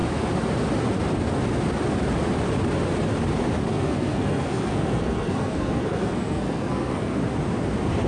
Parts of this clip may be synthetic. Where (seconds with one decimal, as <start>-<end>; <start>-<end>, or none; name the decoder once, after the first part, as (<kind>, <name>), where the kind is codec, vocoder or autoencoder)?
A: 3.7-7.2 (codec, SNAC)